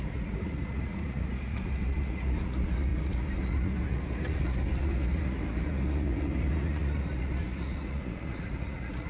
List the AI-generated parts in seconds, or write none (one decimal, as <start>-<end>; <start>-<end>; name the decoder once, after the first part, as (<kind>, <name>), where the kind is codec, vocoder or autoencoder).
0.0-9.1 (vocoder, Vocos)